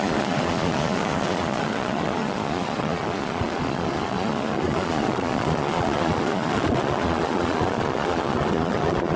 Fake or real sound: fake